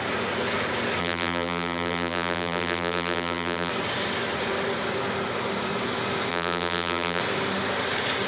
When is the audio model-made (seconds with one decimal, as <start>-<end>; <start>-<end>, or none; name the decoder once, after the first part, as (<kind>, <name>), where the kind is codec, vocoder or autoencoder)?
1.0-3.7 (vocoder, BigVGAN v2); 6.3-7.2